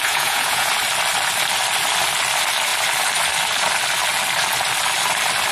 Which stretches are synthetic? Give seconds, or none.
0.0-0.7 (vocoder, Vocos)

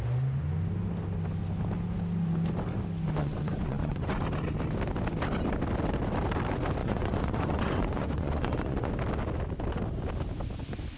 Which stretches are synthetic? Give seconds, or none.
3.2-4.2 (vocoder, Vocos); 6.8-8.9

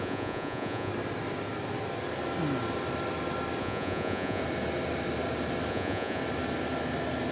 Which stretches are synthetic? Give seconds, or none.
0.0-0.9 (vocoder, Vocos); 3.6-4.4; 5.7-6.2

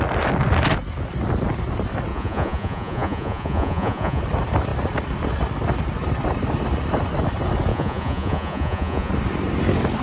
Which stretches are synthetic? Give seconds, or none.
2.1-4.2 (vocoder, Vocos); 7.7-9.1

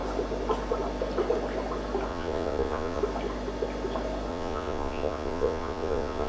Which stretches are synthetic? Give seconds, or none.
2.1-3.0 (vocoder, Vocos); 4.3-6.3

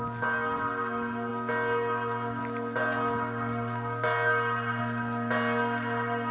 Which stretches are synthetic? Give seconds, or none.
none

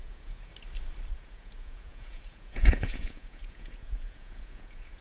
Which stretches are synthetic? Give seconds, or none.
0.0-0.5 (vocoder, Vocos); 1.1-5.0

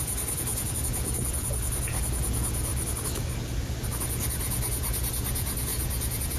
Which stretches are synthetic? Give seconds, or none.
0.0-2.7 (vocoder, Vocos); 4.0-6.4